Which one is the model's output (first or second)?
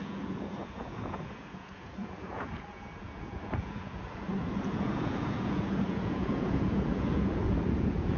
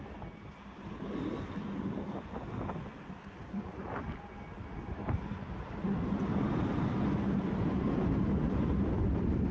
first